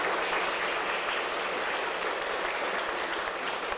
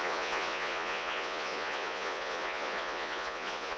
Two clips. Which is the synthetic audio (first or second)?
second